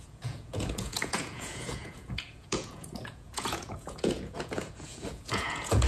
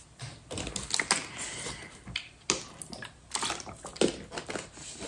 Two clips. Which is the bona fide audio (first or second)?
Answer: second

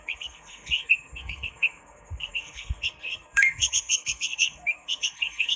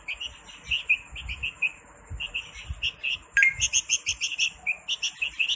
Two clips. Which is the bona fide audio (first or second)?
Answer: second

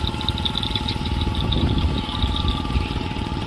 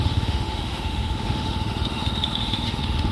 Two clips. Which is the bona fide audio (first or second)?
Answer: first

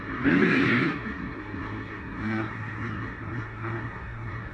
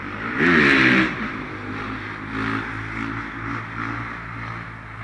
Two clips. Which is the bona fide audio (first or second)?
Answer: second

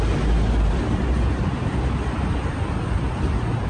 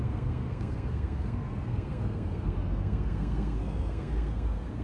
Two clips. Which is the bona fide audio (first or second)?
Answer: first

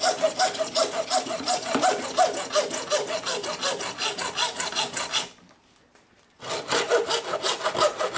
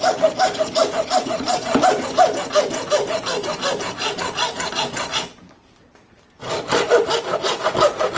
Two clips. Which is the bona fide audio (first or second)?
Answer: first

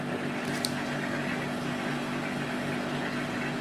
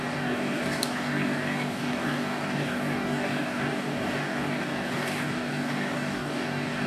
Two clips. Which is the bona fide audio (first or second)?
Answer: first